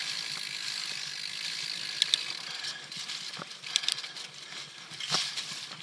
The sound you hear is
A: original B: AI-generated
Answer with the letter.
A